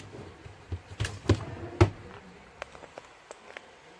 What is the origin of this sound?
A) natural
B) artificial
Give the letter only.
A